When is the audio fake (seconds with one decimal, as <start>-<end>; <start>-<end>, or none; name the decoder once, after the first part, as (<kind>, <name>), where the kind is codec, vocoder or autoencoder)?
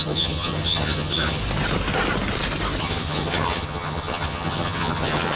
0.0-1.4 (vocoder, HiFi-GAN); 2.8-5.4